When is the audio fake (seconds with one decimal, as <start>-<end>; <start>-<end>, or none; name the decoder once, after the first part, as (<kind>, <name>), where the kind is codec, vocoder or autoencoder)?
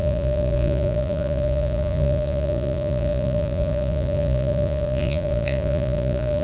0.0-6.4 (vocoder, Vocos)